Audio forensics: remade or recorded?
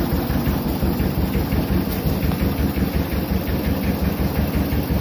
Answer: recorded